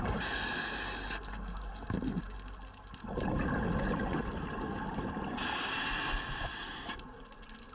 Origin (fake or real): real